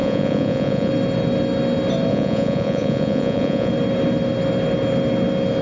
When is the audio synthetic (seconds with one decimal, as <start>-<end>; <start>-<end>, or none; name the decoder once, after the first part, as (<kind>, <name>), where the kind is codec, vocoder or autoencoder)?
0.0-0.9 (vocoder, Vocos); 2.1-3.7